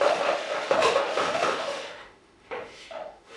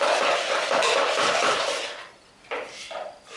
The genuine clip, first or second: second